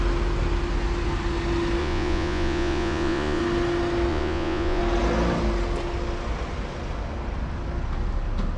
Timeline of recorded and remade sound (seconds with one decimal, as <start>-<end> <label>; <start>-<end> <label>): 0.0-1.8 recorded; 1.8-3.4 remade; 3.4-4.1 recorded; 4.1-4.8 remade; 4.8-8.6 recorded